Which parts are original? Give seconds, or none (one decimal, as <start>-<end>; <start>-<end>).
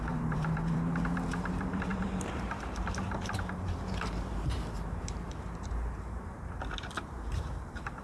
none